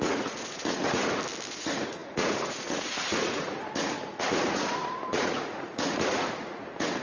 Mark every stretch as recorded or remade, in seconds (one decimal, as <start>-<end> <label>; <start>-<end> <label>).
0.0-1.0 remade; 1.0-1.5 recorded; 1.5-7.0 remade